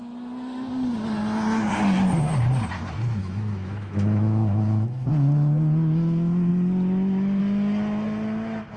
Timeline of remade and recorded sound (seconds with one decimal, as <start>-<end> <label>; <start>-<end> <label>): 0.0-3.2 recorded; 3.2-5.1 remade; 5.1-8.8 recorded